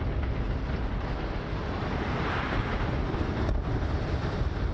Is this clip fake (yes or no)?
no